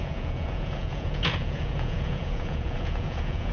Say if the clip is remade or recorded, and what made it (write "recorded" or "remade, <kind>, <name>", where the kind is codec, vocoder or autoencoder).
remade, vocoder, Vocos